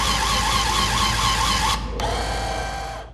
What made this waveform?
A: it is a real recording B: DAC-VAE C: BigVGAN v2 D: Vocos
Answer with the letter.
A